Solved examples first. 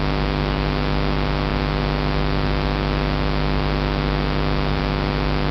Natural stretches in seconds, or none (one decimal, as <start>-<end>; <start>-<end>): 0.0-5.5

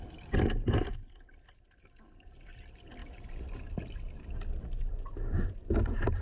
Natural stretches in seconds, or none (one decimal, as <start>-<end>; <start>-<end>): 3.0-4.8

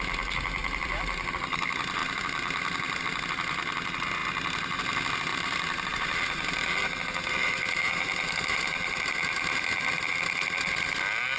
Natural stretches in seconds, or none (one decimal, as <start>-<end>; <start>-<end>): 0.0-0.6; 1.3-2.0; 3.0-5.3; 10.0-11.4

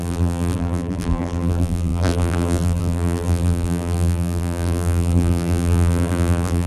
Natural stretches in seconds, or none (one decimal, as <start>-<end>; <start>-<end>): none

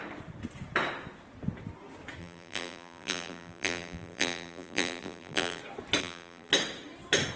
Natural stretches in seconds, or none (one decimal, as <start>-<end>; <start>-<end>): 0.0-2.2; 5.6-6.0; 6.5-7.4

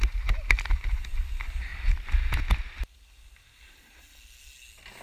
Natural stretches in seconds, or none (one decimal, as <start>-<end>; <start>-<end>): 0.0-5.0

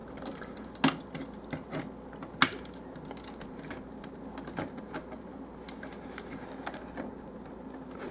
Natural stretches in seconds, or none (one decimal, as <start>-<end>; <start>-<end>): 0.0-8.1